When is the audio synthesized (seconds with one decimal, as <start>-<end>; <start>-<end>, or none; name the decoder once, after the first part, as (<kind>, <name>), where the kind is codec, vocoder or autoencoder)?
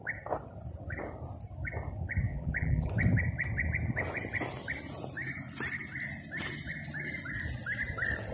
2.3-2.9 (vocoder, BigVGAN v2)